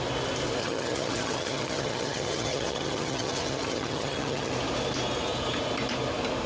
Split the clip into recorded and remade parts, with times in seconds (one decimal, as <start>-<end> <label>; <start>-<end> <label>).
0.0-0.6 recorded; 0.6-4.5 remade; 4.5-6.5 recorded